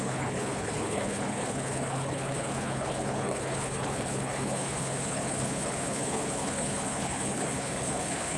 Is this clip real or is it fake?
fake